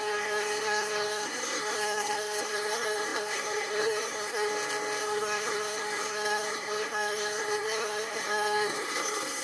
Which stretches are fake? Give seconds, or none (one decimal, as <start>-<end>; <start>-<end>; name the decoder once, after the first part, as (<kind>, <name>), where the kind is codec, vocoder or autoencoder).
0.0-4.5 (codec, SNAC); 5.0-9.4